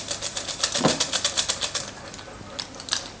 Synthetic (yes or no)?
no